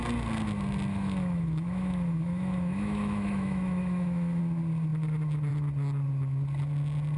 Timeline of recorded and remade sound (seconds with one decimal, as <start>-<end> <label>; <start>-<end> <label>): 0.0-0.9 recorded; 0.9-4.4 remade; 4.4-7.2 recorded